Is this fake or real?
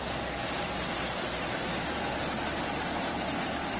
real